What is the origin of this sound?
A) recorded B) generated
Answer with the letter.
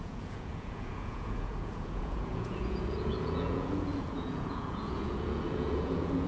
B